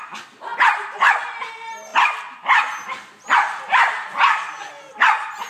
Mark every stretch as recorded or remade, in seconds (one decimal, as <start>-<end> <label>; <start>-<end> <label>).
0.0-5.5 recorded